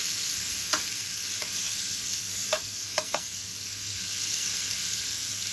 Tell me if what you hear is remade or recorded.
remade